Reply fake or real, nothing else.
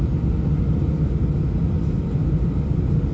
real